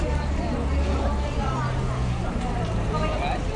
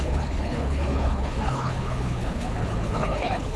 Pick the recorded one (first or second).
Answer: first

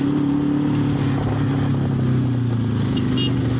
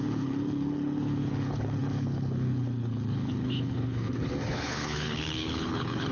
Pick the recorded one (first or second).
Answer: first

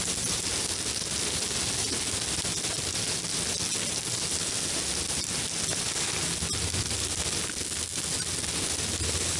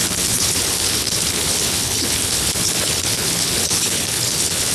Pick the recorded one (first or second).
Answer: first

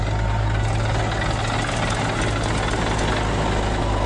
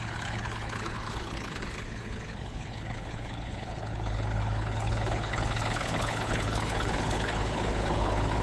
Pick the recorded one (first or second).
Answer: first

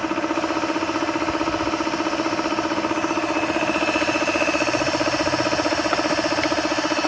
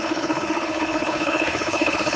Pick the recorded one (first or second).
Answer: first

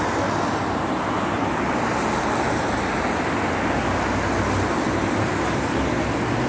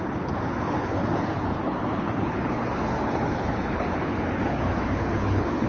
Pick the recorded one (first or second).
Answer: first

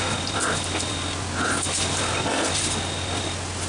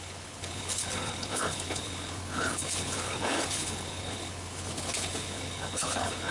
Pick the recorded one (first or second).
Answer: first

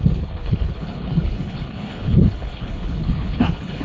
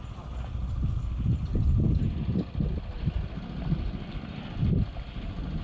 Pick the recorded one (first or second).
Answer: second